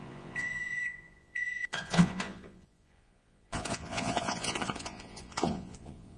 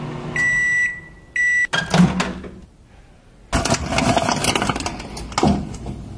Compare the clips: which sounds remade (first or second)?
first